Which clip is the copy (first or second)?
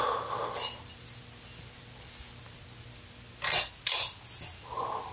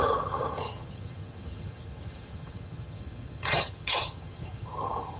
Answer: second